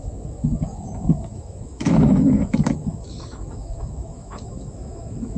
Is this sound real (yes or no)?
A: no